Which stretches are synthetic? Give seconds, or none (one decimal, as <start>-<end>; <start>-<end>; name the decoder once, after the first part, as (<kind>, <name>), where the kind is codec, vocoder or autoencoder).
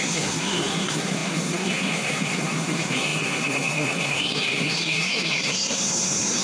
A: 0.0-6.4 (codec, SNAC)